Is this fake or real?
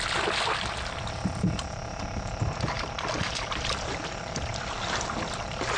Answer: real